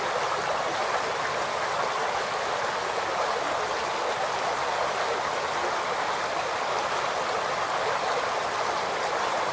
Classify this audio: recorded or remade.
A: recorded